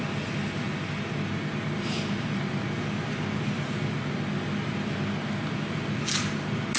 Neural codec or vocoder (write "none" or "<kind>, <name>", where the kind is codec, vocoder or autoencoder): none